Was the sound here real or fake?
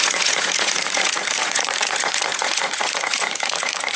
fake